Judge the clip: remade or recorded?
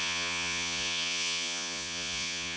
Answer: remade